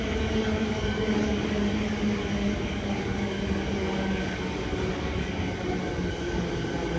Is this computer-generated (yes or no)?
yes